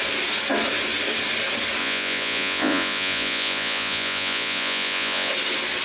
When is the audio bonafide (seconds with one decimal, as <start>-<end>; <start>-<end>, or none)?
0.0-1.8; 5.3-5.8